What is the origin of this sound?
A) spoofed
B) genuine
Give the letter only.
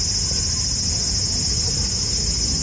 B